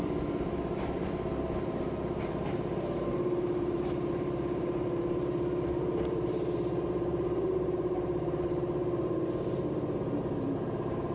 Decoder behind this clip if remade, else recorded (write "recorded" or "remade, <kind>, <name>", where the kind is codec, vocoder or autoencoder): remade, vocoder, BigVGAN v2